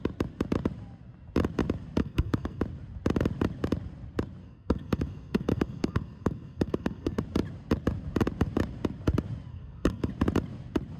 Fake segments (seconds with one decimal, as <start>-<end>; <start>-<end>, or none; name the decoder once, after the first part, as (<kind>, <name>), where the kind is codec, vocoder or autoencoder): 2.0-2.6 (codec, SNAC); 4.4-7.2; 9.5-10.1